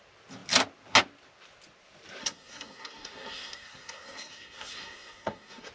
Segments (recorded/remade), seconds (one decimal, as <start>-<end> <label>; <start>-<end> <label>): 0.0-2.2 recorded; 2.2-5.7 remade